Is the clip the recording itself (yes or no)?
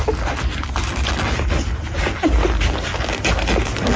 yes